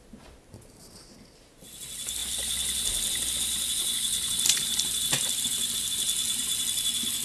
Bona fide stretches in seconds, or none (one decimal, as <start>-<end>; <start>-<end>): 0.0-7.2